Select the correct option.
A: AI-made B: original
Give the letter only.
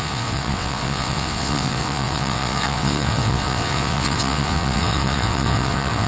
A